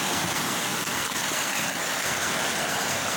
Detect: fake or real fake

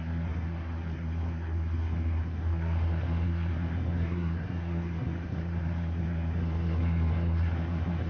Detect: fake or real fake